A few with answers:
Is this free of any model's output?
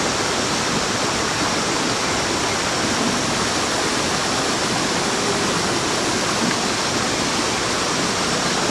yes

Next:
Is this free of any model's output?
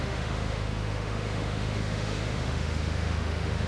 no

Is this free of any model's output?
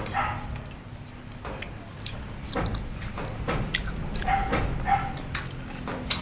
yes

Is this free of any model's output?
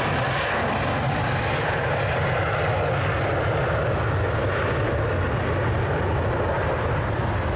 yes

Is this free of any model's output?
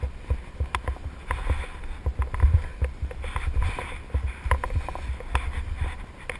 yes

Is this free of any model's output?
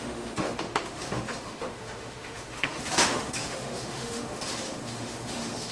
no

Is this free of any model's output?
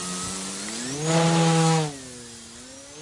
yes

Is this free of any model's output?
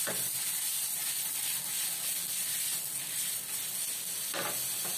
yes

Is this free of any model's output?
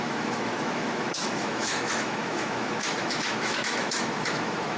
no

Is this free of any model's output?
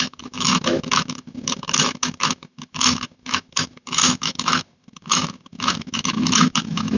no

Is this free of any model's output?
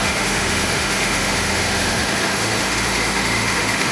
no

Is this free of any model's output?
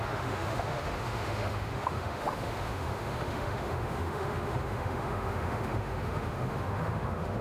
no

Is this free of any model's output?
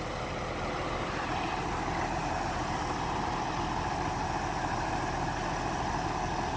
yes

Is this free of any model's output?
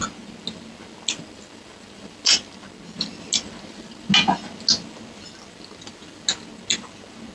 yes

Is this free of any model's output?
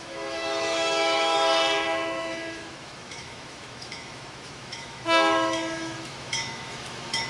no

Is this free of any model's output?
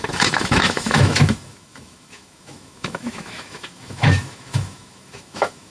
no